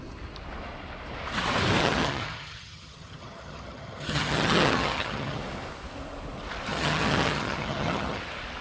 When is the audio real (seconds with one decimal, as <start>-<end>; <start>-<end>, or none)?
0.0-1.8; 5.4-6.7; 8.2-8.6

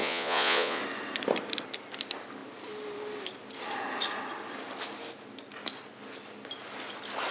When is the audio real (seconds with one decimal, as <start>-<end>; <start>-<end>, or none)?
0.8-7.3

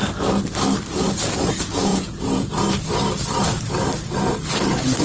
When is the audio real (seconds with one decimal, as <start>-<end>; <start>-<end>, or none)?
0.0-1.9; 2.5-5.0

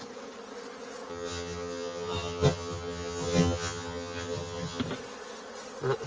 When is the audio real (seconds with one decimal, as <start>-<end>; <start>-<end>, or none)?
0.0-1.1; 4.8-6.1

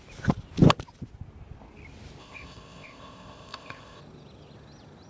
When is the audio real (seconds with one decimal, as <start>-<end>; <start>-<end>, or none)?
0.0-2.2; 4.0-5.1

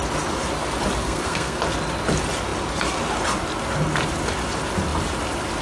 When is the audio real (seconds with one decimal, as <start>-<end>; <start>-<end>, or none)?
0.0-1.0; 1.6-5.6